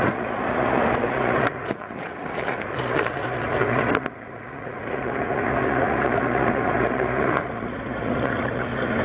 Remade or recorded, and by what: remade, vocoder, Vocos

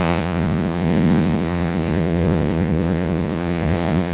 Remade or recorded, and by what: remade, vocoder, Vocos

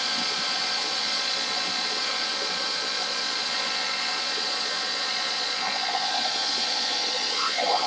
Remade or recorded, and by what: remade, vocoder, Vocos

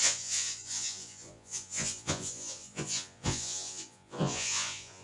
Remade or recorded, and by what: remade, vocoder, Vocos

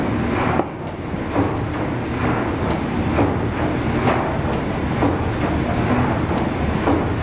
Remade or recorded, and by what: recorded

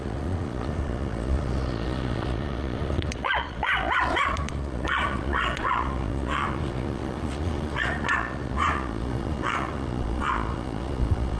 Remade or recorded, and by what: remade, vocoder, Vocos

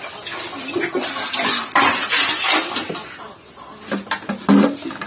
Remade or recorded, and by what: recorded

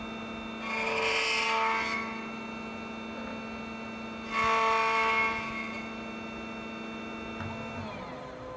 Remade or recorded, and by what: recorded